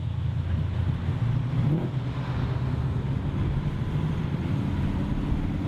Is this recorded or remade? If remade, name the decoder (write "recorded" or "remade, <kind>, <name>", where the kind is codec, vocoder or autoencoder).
recorded